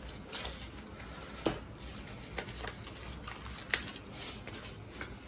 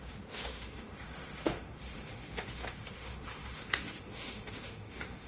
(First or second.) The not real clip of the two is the second